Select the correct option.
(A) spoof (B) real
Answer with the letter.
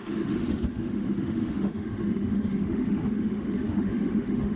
A